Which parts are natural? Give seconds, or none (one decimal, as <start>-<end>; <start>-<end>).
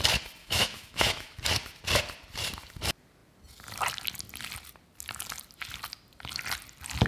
0.0-0.4; 1.4-7.1